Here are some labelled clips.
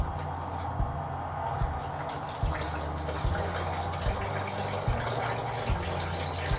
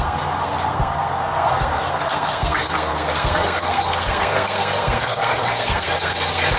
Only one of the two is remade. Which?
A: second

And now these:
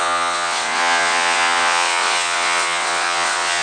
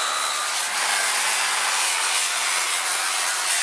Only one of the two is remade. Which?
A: first